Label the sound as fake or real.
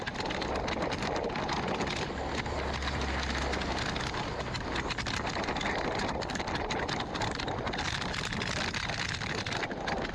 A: real